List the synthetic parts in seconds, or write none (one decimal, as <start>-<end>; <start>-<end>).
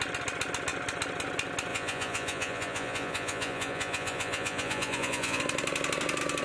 1.7-5.4